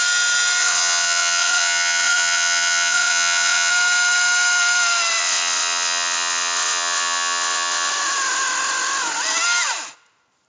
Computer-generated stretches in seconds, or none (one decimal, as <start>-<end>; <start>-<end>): 0.6-3.7; 5.2-7.9